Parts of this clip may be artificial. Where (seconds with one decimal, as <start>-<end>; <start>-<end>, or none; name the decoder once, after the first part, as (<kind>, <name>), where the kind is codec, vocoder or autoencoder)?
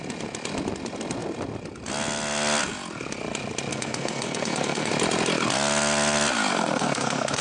3.7-4.9 (codec, SNAC); 6.5-7.4